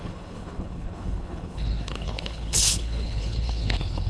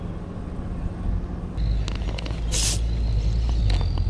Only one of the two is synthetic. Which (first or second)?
first